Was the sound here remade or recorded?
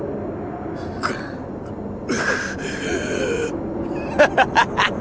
recorded